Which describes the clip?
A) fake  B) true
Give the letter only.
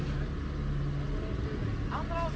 B